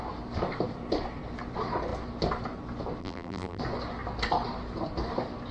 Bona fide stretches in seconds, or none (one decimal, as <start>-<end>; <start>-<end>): 0.0-3.0; 3.6-5.5